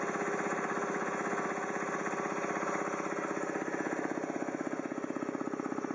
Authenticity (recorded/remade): recorded